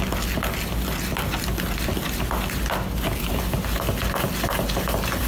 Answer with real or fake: real